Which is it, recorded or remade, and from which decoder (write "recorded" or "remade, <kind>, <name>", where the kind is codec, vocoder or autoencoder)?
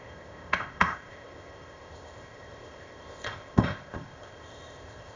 remade, codec, ZipCodec